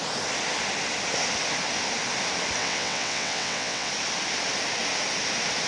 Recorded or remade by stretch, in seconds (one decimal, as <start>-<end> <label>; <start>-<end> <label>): 0.0-2.6 recorded; 2.6-3.9 remade; 3.9-5.7 recorded

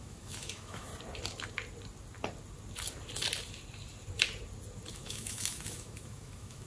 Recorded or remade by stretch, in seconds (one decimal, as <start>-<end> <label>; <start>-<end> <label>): 0.0-0.9 remade; 0.9-4.9 recorded; 4.9-6.7 remade

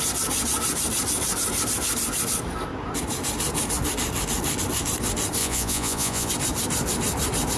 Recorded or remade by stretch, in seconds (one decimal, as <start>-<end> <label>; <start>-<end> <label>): 0.0-5.4 recorded; 5.4-6.3 remade; 6.3-7.6 recorded

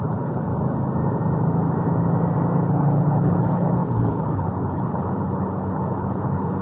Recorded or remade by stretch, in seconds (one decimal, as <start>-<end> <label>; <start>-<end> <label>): 0.0-0.5 remade; 0.5-2.7 recorded; 2.7-6.6 remade